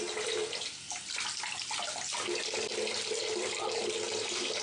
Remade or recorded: recorded